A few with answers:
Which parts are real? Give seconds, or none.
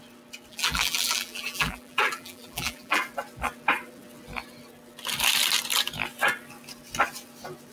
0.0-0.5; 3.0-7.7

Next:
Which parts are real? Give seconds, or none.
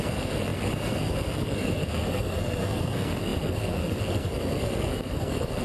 none